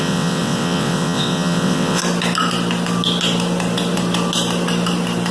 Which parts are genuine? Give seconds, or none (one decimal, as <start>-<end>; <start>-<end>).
2.0-5.3